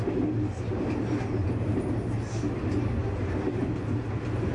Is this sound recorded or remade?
recorded